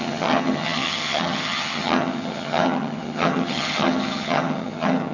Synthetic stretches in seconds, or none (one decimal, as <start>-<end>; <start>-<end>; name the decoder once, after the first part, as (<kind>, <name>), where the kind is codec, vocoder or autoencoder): 0.0-5.1 (vocoder, HiFi-GAN)